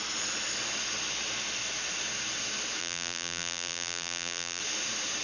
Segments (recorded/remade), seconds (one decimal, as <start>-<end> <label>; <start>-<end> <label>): 0.0-2.8 recorded; 2.8-4.6 remade; 4.6-5.2 recorded